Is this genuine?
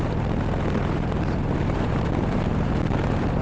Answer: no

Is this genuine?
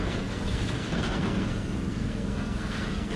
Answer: no